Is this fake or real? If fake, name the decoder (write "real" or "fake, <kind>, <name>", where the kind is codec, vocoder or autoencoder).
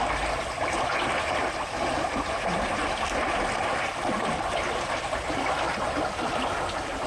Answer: real